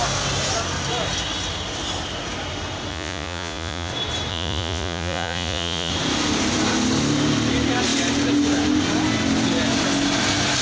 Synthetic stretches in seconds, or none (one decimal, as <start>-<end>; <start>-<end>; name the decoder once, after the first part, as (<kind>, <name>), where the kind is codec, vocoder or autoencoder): 2.9-3.9 (vocoder, Vocos); 4.3-5.9

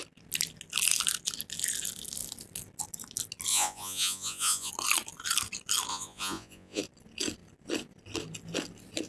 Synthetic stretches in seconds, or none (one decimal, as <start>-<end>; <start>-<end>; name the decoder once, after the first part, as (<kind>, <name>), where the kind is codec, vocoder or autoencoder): 3.5-4.7 (vocoder, Vocos); 5.9-6.8

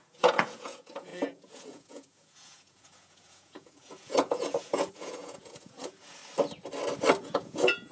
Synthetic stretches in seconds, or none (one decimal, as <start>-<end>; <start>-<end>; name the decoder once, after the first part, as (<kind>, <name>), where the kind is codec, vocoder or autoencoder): 0.0-6.2 (vocoder, Vocos); 7.2-7.9

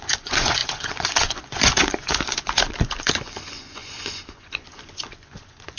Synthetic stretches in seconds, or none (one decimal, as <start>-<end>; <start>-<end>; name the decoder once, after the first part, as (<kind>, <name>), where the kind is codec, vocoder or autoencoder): 0.0-5.8 (vocoder, Vocos)

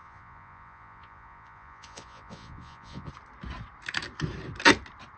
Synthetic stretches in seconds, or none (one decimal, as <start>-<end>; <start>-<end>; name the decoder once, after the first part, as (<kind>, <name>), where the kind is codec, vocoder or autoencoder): 0.0-3.1 (vocoder, Vocos)

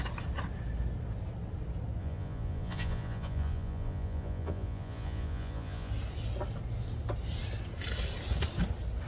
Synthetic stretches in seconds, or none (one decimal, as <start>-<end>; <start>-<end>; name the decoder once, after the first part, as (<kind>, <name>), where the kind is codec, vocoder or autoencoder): 2.0-5.9 (vocoder, Vocos)